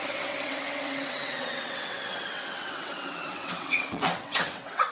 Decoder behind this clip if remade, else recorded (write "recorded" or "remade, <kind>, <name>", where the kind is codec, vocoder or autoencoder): remade, vocoder, WaveNeXt